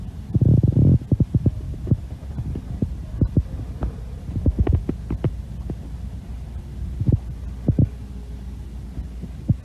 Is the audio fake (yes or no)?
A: no